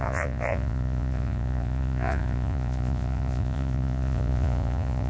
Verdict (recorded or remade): remade